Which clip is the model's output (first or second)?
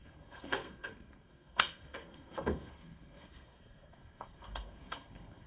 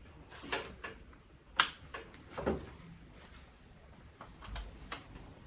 first